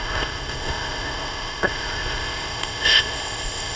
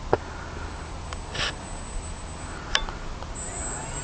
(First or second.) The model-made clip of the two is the first